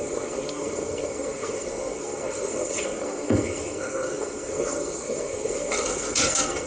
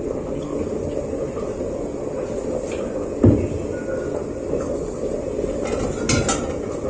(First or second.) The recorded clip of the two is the second